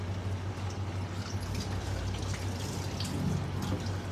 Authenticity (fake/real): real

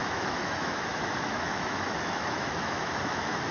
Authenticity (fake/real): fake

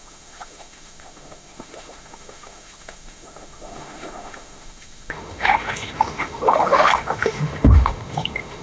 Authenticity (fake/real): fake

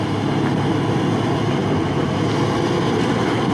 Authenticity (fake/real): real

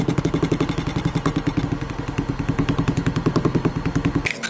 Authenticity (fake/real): real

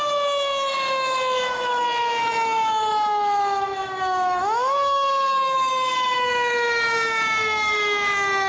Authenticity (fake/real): fake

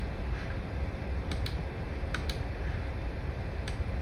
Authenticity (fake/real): real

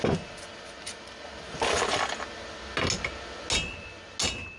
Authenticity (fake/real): real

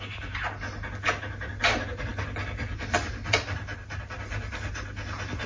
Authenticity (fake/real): real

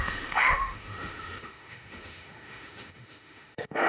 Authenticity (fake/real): fake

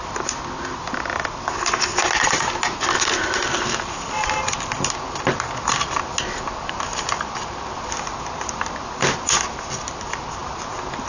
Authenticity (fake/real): real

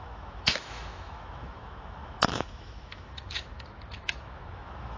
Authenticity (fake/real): fake